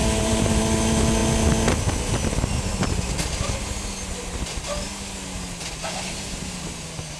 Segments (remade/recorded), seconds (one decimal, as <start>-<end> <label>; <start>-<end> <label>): 0.0-0.6 remade; 0.6-7.2 recorded